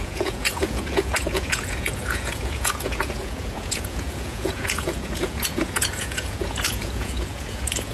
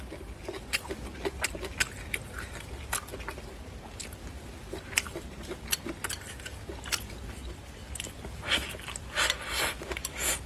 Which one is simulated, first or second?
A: first